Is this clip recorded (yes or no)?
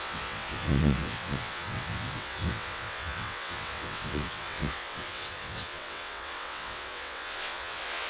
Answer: no